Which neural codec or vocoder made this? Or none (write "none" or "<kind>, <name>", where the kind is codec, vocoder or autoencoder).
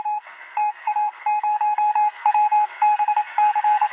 codec, SNAC